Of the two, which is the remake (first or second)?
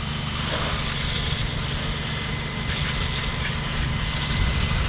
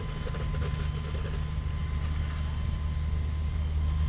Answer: first